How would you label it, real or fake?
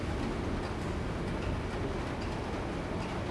real